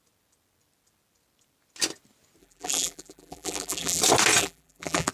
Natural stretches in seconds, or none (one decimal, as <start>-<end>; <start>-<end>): 0.0-2.4; 4.0-4.4